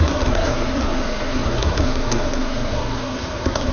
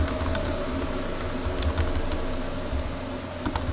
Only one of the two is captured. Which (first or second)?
second